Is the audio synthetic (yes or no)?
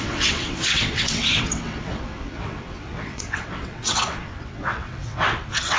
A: yes